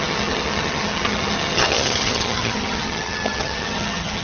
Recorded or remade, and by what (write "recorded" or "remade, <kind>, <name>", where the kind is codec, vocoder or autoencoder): remade, vocoder, HiFi-GAN